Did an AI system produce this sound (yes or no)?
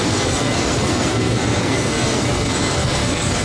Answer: yes